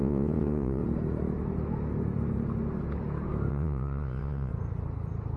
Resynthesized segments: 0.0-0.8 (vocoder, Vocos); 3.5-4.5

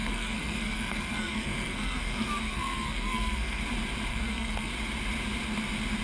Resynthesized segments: 0.0-3.6 (codec, SNAC); 4.1-4.7

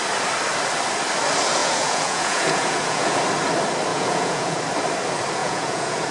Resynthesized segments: 1.6-3.2 (vocoder, Vocos); 3.9-4.6; 5.4-6.1

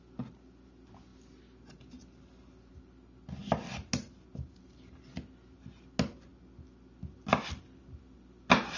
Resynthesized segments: none

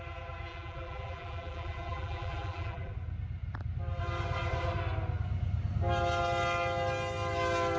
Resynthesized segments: 0.5-2.9 (vocoder, BigVGAN v2)

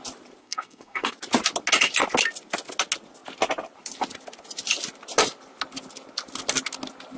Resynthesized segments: 0.4-1.1 (codec, SNAC)

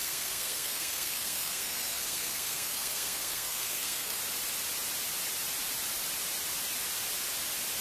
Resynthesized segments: 0.0-4.2 (codec, SNAC)